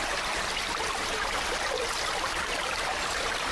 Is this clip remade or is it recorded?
recorded